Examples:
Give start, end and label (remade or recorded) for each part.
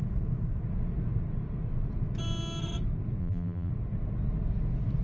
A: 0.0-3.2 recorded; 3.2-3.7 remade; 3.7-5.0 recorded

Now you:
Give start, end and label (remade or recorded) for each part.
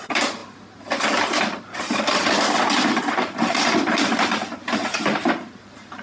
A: 0.0-0.4 remade; 0.4-1.6 recorded; 1.6-6.0 remade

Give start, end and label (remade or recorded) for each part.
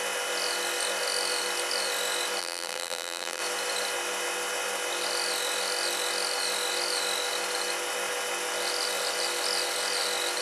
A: 0.0-2.4 recorded; 2.4-3.4 remade; 3.4-10.4 recorded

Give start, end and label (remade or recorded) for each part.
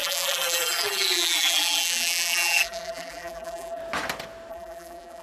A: 0.0-3.8 remade; 3.8-4.5 recorded; 4.5-5.2 remade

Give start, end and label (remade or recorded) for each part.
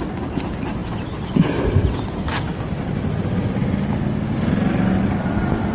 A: 0.0-0.8 recorded; 0.8-3.2 remade; 3.2-5.7 recorded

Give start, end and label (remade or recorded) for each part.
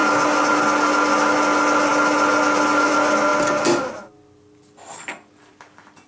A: 0.0-6.1 recorded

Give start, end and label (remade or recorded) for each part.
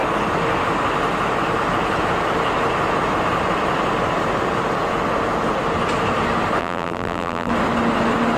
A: 0.0-6.6 recorded; 6.6-7.5 remade; 7.5-8.4 recorded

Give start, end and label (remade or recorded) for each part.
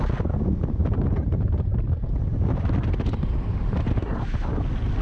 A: 0.0-0.8 recorded; 0.8-3.8 remade; 3.8-5.0 recorded